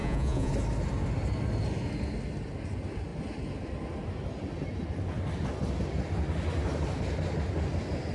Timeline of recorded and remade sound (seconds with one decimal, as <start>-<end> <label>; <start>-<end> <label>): 0.0-0.5 remade; 0.5-8.1 recorded